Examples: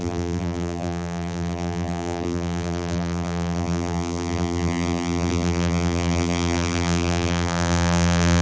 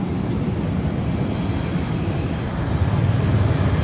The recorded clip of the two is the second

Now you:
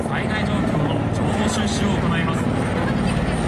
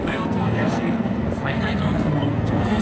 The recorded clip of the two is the first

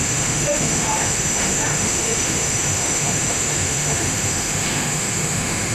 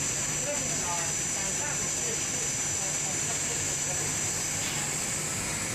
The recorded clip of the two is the second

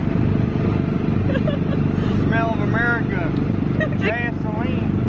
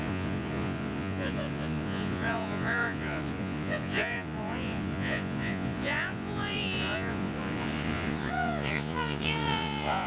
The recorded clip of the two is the first